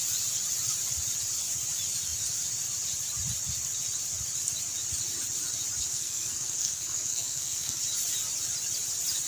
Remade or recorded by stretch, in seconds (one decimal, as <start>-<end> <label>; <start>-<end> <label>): 0.0-5.8 recorded; 5.8-7.8 remade; 7.8-9.3 recorded